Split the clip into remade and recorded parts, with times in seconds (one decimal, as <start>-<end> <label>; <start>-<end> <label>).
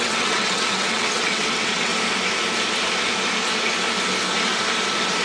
0.0-1.9 remade; 1.9-5.2 recorded